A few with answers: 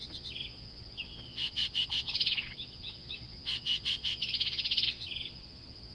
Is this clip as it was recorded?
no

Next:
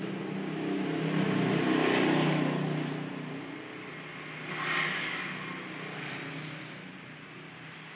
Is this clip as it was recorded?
yes